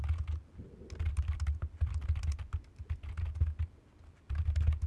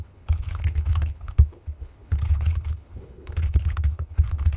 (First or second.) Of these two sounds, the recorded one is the first